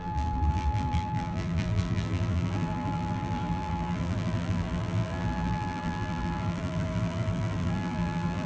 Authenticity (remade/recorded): remade